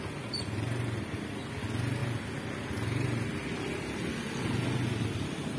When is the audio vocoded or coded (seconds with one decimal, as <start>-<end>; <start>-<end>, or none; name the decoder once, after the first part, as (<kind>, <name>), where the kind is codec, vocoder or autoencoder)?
none